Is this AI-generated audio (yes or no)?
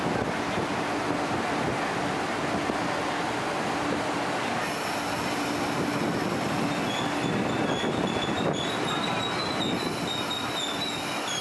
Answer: no